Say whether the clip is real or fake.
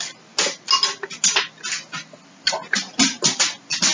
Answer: real